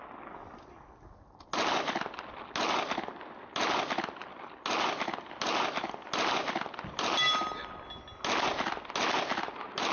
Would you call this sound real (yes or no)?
yes